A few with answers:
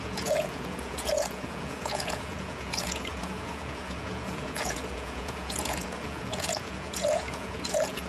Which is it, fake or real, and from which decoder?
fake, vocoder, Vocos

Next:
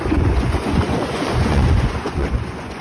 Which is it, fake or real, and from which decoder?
fake, vocoder, Vocos